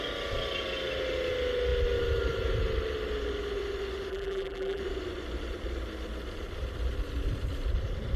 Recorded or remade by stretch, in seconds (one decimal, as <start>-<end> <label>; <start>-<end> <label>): 0.0-4.1 recorded; 4.1-4.8 remade; 4.8-8.2 recorded